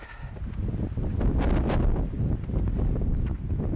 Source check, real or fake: real